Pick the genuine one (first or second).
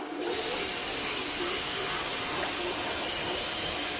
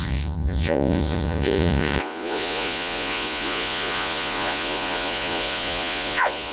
first